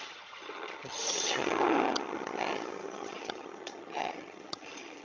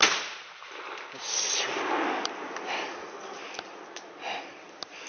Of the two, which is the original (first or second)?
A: second